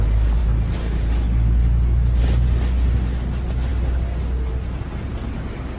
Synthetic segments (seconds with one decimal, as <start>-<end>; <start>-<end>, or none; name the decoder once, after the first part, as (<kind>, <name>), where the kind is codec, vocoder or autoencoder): none